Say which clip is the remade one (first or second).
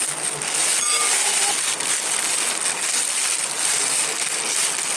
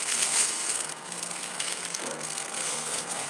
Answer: second